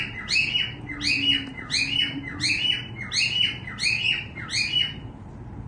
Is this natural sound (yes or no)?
yes